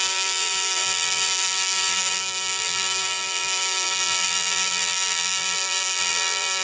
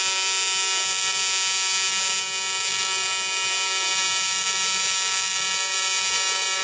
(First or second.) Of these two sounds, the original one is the second